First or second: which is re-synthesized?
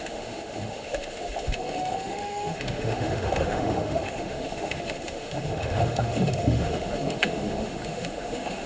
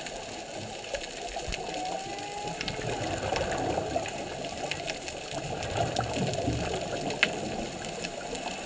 first